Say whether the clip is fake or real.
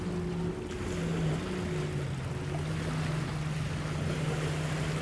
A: real